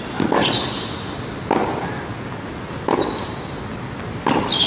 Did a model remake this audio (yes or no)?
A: no